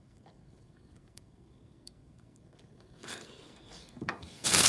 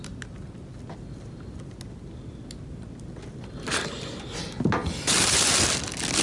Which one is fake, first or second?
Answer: first